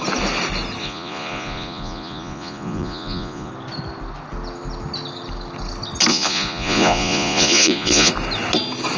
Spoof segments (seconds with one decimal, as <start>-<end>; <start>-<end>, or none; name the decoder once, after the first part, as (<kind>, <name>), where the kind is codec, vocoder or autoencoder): 0.8-3.5 (vocoder, Vocos); 6.1-8.1